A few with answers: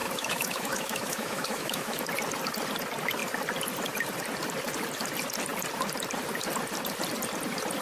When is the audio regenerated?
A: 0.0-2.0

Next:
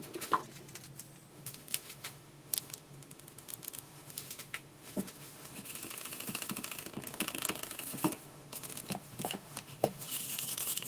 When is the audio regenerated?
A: 0.0-0.4; 1.3-10.9

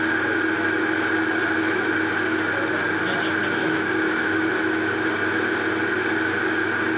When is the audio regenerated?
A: 3.6-5.1

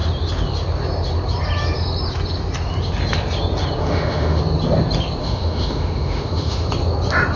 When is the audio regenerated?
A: 3.8-4.4; 5.2-6.7

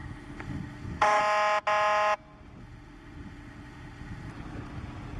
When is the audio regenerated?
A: 0.0-1.2; 2.6-4.3

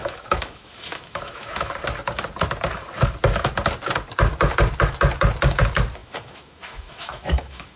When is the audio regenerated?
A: 0.0-1.7; 6.0-7.8

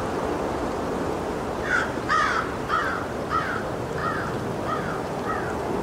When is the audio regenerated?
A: none

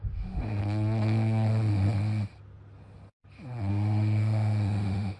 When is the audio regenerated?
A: 0.0-0.6; 3.7-5.2